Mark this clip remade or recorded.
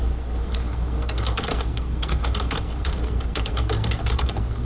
remade